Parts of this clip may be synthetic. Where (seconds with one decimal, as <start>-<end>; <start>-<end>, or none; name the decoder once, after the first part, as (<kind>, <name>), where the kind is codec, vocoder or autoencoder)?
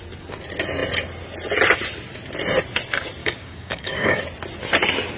3.2-4.2 (codec, DAC)